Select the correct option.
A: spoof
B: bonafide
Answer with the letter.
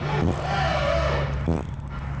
B